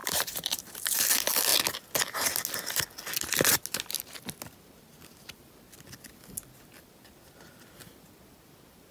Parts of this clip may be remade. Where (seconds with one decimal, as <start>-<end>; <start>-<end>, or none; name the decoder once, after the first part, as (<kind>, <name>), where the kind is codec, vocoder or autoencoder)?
0.0-1.0 (vocoder, BigVGAN v2)